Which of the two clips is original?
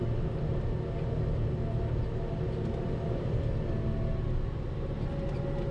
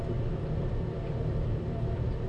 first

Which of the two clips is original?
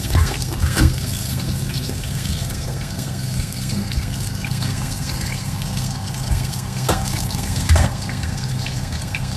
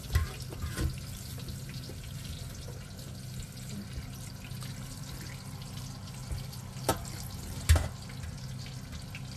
second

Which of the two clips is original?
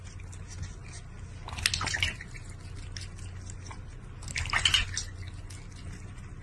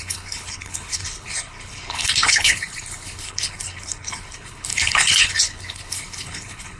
first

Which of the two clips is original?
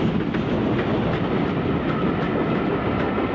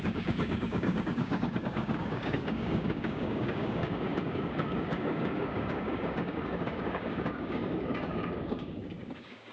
first